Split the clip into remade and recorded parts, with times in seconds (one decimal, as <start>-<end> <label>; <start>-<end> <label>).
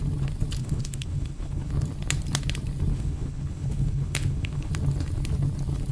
0.0-0.6 recorded; 0.6-1.7 remade; 1.7-2.9 recorded; 2.9-4.7 remade; 4.7-5.9 recorded